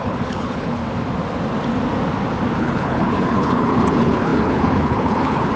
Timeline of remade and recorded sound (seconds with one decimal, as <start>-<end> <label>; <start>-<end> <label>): 0.0-0.8 remade; 0.8-2.6 recorded; 2.6-5.6 remade